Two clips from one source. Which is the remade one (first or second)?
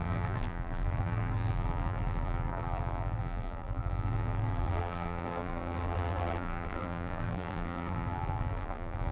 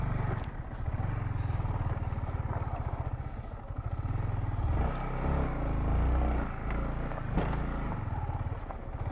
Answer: first